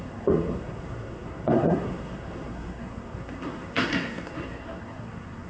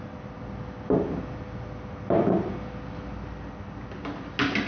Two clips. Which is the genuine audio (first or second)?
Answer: second